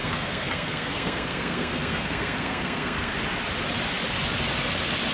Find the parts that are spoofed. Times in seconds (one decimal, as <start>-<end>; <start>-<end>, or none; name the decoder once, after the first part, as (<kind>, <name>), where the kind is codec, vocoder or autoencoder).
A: 0.0-3.1 (codec, SNAC)